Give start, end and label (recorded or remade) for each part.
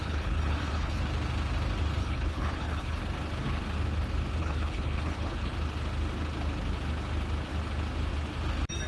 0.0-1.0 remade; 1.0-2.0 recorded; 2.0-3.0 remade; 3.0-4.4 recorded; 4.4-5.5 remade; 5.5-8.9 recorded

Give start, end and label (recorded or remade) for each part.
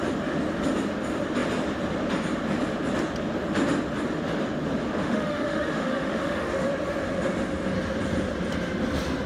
0.0-5.0 recorded; 5.0-6.7 remade; 6.7-9.3 recorded